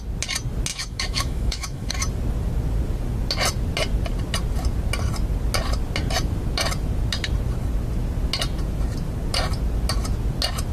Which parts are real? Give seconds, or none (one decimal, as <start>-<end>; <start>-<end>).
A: 0.0-0.7; 1.9-10.7